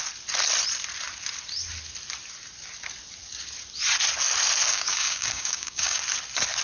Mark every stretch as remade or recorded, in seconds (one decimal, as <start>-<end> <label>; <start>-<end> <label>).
0.0-4.7 recorded; 4.7-6.0 remade; 6.0-6.6 recorded